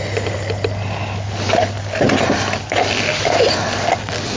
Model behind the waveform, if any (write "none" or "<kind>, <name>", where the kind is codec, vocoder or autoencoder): none